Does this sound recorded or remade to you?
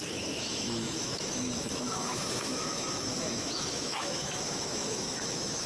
remade